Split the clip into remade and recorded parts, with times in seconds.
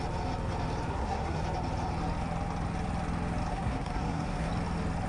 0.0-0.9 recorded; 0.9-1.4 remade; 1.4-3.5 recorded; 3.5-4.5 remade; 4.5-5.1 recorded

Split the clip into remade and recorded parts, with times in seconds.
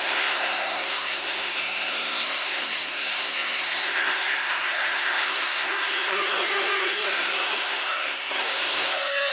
0.0-9.3 remade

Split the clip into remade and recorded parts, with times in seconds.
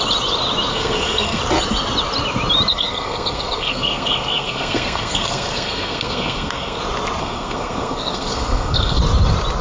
0.0-0.7 recorded; 0.7-1.4 remade; 1.4-2.7 recorded; 2.7-6.8 remade; 6.8-7.2 recorded; 7.2-9.0 remade; 9.0-9.6 recorded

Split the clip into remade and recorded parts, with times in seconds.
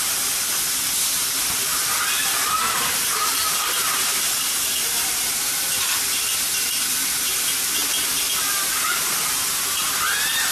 0.0-10.5 recorded